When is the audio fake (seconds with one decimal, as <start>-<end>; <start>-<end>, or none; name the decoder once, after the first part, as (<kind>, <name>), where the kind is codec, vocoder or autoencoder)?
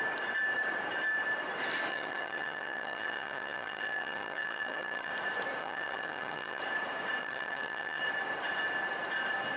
1.9-5.1 (vocoder, HiFi-GAN); 5.6-6.6; 7.2-8.0